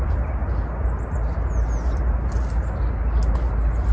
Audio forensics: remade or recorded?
recorded